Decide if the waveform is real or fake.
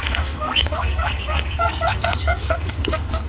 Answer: fake